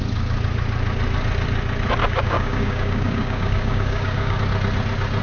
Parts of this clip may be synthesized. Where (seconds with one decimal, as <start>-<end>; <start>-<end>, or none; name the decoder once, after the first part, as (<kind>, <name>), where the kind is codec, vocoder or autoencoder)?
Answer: 2.0-4.4 (codec, DAC)